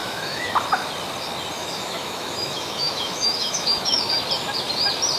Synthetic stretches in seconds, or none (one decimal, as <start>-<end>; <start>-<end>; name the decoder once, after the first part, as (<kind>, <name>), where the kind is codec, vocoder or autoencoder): 0.0-0.5 (autoencoder, DAC-VAE); 1.6-4.1